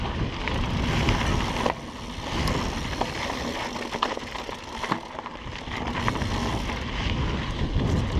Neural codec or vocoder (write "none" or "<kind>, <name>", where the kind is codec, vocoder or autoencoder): none